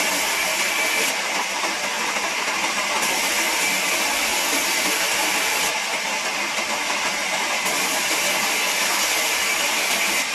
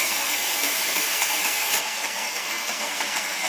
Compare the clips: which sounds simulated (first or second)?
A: second